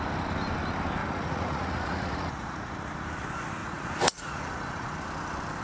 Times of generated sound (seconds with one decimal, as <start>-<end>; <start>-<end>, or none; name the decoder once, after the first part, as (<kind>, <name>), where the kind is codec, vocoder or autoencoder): 1.0-2.7 (vocoder, Vocos); 3.6-4.9